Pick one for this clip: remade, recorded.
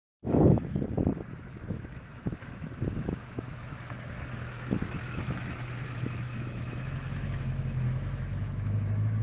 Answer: remade